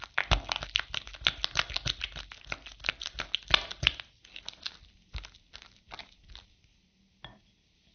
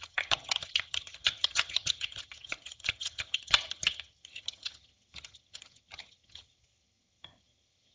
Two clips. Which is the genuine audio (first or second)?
first